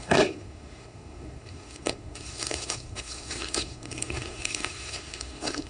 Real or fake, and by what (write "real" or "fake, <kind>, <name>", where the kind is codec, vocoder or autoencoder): fake, codec, SNAC